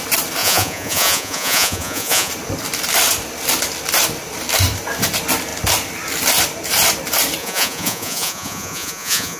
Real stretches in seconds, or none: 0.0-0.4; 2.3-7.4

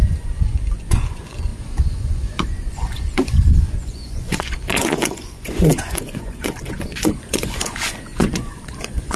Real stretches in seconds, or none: none